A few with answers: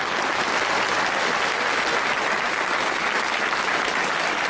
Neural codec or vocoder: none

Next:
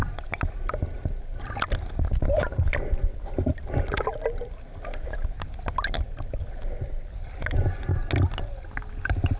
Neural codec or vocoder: none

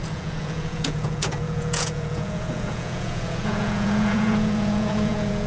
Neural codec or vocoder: vocoder, Vocos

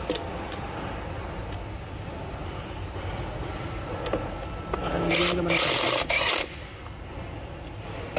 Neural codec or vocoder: none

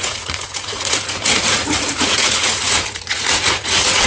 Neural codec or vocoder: vocoder, Vocos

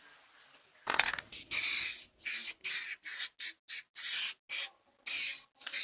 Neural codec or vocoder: none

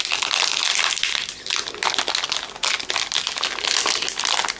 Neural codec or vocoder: none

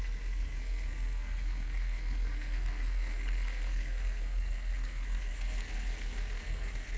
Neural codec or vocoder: codec, SNAC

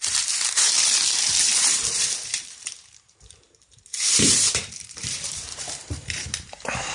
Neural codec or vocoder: vocoder, BigVGAN v2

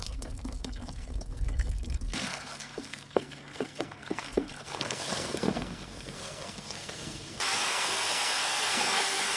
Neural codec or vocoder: codec, SNAC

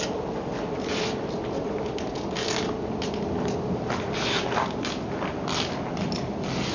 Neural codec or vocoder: none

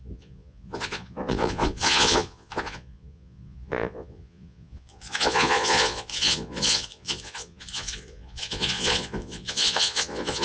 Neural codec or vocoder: vocoder, Vocos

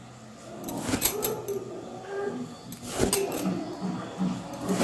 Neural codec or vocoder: none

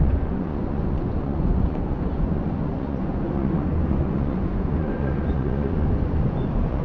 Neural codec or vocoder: vocoder, Vocos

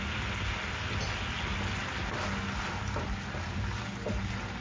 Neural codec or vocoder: none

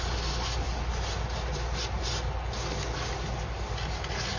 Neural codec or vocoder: none